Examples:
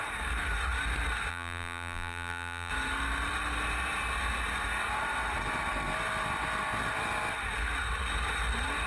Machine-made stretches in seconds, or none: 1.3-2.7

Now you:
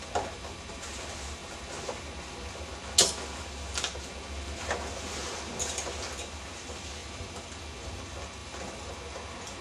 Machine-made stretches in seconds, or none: 7.0-7.6; 8.4-8.9